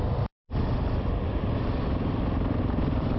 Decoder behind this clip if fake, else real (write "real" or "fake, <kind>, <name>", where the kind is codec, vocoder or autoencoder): fake, vocoder, BigVGAN v2